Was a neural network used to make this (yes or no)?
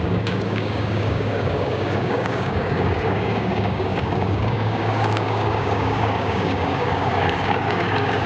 yes